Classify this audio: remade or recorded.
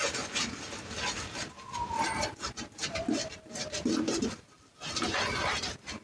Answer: recorded